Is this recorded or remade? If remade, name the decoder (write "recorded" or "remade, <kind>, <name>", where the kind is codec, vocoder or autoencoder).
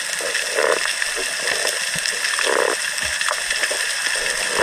recorded